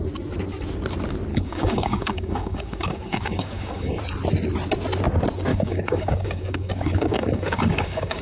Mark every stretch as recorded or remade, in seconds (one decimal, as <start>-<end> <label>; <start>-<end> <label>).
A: 0.0-1.3 recorded; 1.3-4.0 remade; 4.0-5.5 recorded; 5.5-8.2 remade